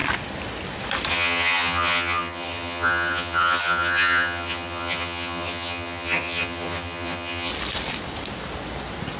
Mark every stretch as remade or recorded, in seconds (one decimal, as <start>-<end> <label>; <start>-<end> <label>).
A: 0.0-1.1 recorded; 1.1-7.5 remade; 7.5-9.2 recorded